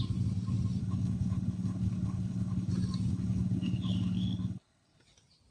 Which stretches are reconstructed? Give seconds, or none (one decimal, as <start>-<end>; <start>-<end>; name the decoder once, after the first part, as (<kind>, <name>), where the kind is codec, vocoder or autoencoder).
0.8-2.7 (codec, HILCodec); 3.1-5.0